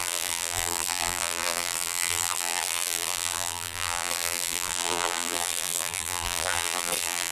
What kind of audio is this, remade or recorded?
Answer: remade